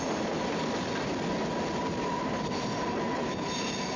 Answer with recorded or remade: recorded